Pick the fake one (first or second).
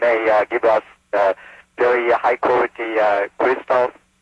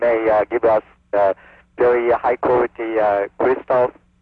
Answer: first